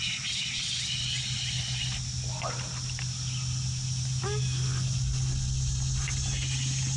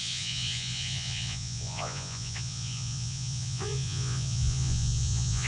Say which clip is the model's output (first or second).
second